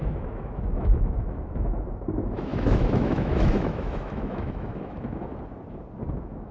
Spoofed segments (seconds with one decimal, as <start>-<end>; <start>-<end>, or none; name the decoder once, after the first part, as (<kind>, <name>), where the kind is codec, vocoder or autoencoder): 0.0-5.3 (autoencoder, DAC-VAE); 6.1-6.5